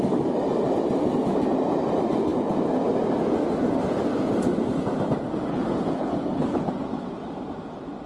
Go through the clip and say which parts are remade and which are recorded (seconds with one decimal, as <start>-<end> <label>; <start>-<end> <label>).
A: 0.0-5.5 recorded; 5.5-6.7 remade; 6.7-8.1 recorded